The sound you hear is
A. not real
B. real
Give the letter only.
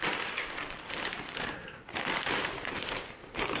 A